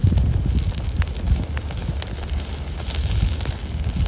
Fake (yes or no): no